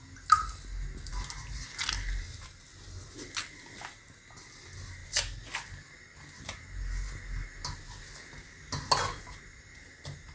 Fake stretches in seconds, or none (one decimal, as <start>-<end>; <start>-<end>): none